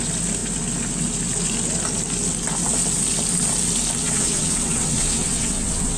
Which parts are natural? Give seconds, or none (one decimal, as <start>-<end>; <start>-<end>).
0.0-4.0